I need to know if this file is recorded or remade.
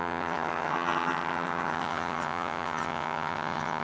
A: remade